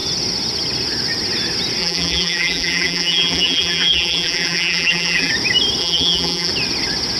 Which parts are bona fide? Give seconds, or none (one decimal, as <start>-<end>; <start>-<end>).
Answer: 0.0-1.8; 5.3-5.8; 6.5-7.2